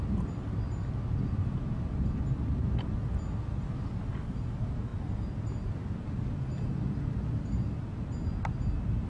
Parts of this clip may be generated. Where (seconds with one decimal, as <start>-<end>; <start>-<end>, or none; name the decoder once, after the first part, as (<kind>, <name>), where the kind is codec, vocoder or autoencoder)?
none

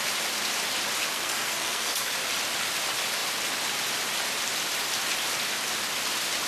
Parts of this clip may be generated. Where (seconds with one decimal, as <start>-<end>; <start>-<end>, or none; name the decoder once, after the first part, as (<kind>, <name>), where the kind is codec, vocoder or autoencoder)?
1.0-2.1 (codec, SNAC)

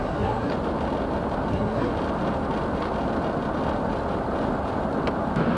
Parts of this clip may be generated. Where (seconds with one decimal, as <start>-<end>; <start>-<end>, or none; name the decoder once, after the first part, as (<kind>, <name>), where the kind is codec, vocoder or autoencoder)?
0.0-0.5 (codec, SNAC); 1.5-1.9

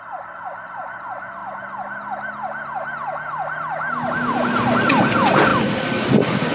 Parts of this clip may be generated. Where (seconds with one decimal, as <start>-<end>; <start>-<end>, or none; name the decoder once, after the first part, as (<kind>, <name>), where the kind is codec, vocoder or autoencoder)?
none